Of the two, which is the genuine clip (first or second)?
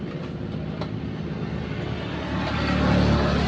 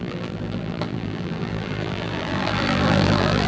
first